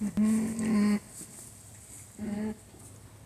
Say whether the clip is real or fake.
real